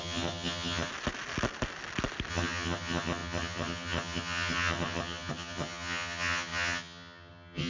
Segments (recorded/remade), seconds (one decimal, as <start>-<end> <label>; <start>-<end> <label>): 0.0-0.9 remade; 0.9-2.3 recorded; 2.3-7.7 remade